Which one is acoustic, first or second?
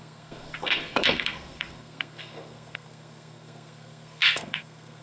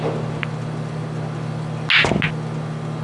second